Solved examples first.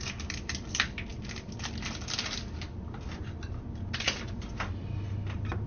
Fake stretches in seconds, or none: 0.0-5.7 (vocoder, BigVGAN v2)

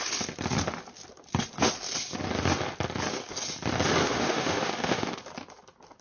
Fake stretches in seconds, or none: 4.0-5.2 (autoencoder, DAC-VAE)

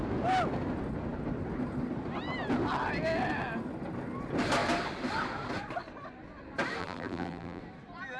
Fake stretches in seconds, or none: 6.8-7.6 (vocoder, BigVGAN v2)

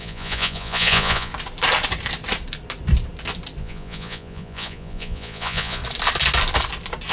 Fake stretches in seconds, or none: 0.0-1.3 (vocoder, Vocos); 3.6-5.8

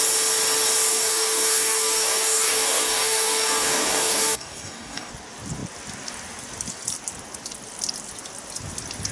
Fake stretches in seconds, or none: 0.9-5.1 (codec, DAC)

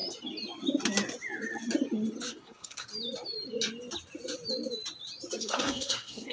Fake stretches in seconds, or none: 2.3-2.9 (codec, SNAC); 5.4-6.3